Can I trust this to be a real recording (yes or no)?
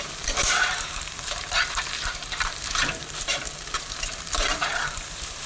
no